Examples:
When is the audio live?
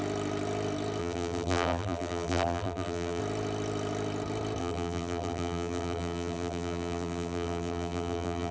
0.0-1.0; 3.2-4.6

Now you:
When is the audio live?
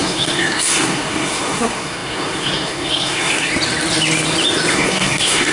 3.5-4.7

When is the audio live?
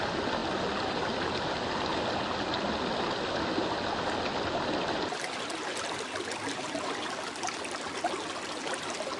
0.0-9.2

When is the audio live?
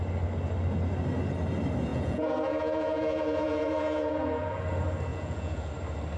0.0-1.9; 4.6-5.1; 5.7-6.2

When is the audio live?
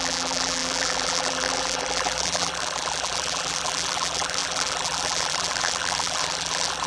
none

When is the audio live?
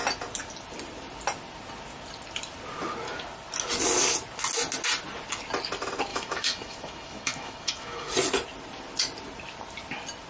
0.0-6.1; 8.1-10.3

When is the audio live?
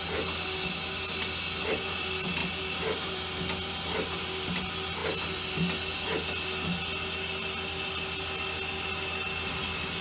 0.0-10.0